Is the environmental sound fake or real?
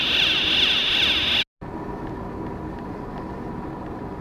real